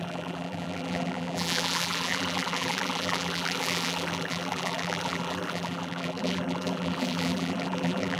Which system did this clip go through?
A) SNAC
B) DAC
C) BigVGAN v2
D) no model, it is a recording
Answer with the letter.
C